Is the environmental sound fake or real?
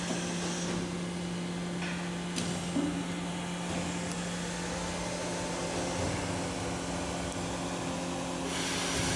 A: real